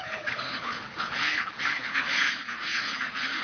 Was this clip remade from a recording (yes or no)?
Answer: yes